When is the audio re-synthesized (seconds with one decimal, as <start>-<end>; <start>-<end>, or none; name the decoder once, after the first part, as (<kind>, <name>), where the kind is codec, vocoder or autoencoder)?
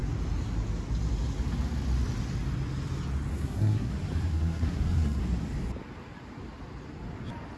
3.3-3.9 (codec, SNAC); 4.3-5.2